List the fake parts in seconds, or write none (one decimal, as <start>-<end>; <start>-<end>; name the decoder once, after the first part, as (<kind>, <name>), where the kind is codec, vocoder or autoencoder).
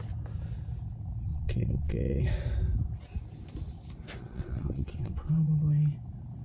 1.3-2.2 (vocoder, WaveNeXt); 4.2-5.5